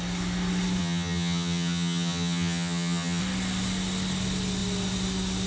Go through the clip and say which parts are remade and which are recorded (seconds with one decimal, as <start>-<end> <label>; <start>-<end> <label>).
0.0-0.8 recorded; 0.8-3.2 remade; 3.2-5.5 recorded